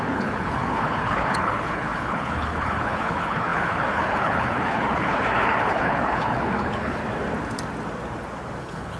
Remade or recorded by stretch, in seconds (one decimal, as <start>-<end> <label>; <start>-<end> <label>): 0.0-7.0 remade; 7.0-8.6 recorded; 8.6-9.0 remade